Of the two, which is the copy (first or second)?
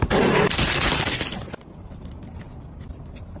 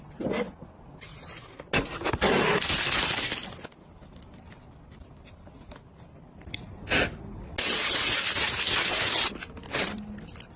first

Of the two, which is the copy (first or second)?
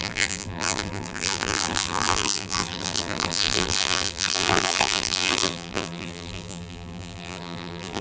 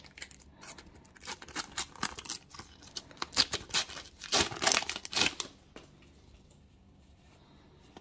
first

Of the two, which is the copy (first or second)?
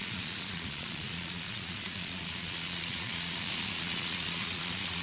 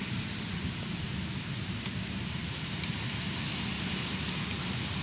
first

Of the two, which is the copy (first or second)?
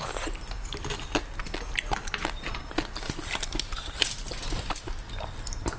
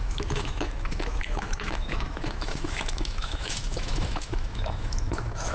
second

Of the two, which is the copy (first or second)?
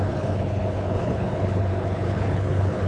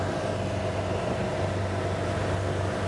first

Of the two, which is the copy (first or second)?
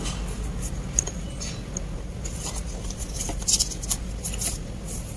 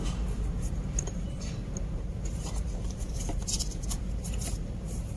second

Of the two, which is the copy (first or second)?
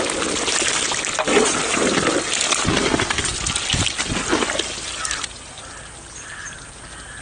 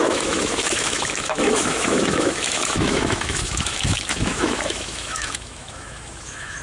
second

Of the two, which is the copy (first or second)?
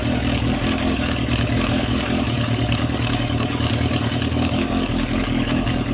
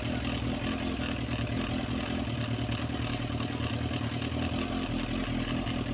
first